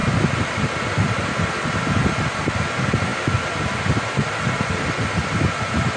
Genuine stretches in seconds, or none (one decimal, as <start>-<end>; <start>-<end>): 0.0-6.0